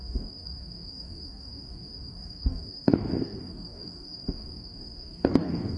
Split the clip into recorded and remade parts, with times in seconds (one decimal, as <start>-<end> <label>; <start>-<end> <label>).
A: 0.0-5.8 remade